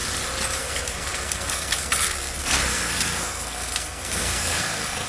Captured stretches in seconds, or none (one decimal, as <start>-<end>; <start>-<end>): 0.0-0.6